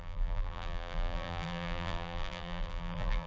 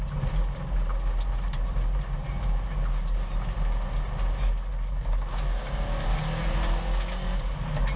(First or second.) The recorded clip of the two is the second